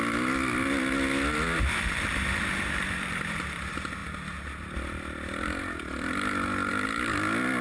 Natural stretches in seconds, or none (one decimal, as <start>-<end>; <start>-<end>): 0.0-7.6